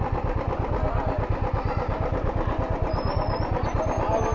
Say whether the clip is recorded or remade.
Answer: recorded